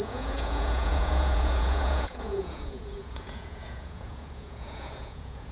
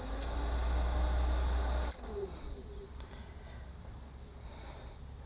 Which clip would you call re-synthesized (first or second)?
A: first